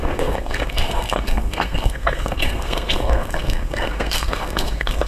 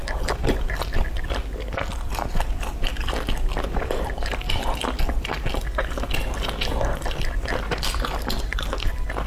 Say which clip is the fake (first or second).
first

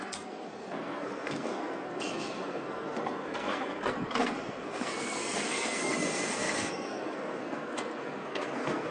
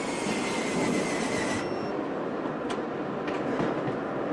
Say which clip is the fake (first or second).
first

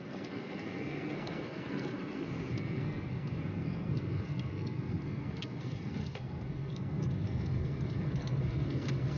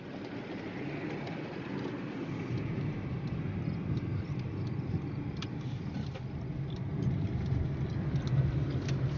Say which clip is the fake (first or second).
first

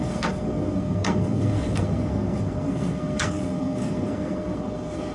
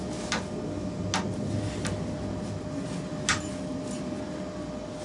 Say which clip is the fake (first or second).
first